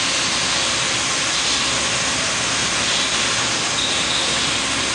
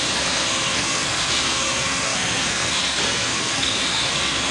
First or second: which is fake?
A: second